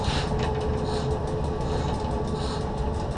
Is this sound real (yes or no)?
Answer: yes